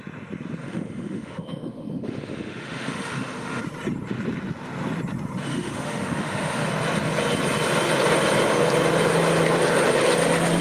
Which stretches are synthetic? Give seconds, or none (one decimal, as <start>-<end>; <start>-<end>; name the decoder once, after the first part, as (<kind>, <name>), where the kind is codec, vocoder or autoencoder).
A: 0.6-3.6 (autoencoder, DAC-VAE); 5.5-6.7